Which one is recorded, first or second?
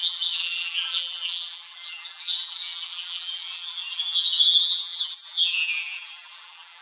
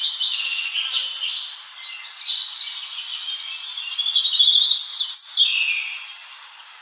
second